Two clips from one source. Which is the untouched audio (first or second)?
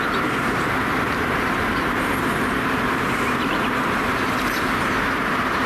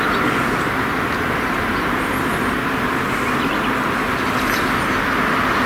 second